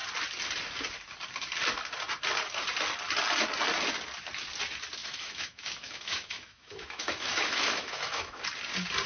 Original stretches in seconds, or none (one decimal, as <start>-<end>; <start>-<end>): 0.0-5.0; 8.4-9.1